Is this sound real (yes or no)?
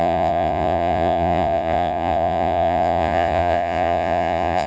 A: no